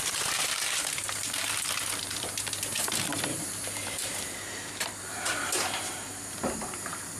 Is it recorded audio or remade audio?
remade